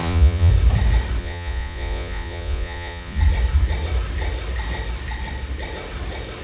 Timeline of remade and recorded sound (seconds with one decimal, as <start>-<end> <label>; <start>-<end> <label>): 0.0-0.5 remade; 0.5-1.2 recorded; 1.2-3.2 remade; 3.2-6.4 recorded